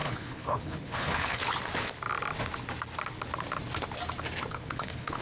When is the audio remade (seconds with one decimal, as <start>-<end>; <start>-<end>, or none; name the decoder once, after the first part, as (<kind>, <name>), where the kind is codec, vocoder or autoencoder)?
0.0-1.4 (codec, HILCodec); 4.5-5.2